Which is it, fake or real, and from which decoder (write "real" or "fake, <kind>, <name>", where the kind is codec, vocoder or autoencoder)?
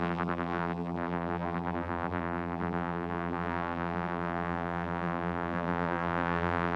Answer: fake, vocoder, BigVGAN v2